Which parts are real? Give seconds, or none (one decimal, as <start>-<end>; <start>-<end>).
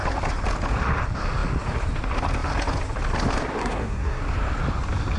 0.0-3.6; 4.2-5.2